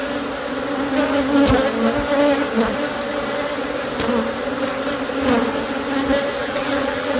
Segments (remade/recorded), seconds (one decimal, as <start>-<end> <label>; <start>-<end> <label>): 0.0-6.4 recorded; 6.4-7.2 remade